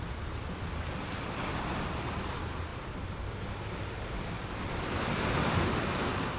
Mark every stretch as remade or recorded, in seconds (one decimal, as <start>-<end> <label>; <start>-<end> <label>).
0.0-6.4 recorded